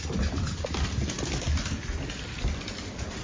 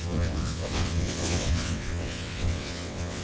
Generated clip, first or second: second